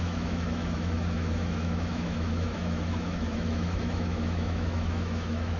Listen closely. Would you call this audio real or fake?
fake